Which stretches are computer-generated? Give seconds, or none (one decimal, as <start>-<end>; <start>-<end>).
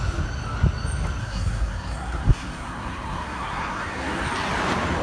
1.2-4.2